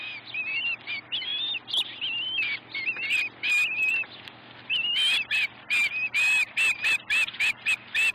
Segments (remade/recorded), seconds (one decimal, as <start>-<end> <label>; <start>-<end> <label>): 0.0-8.1 recorded